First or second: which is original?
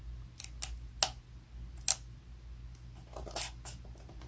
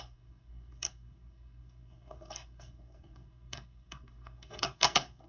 first